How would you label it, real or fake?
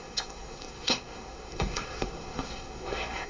fake